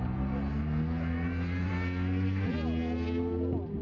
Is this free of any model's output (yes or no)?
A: yes